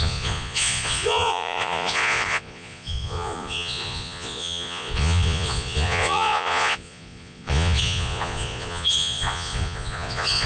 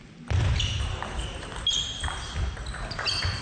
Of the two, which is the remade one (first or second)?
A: first